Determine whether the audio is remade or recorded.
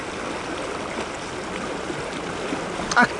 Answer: recorded